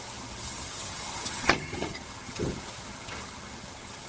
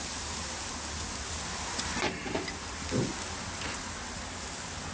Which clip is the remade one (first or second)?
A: first